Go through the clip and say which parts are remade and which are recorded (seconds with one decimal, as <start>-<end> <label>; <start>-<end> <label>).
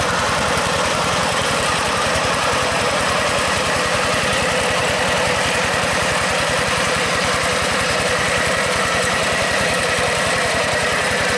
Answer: 0.0-4.8 remade; 4.8-5.4 recorded; 5.4-11.4 remade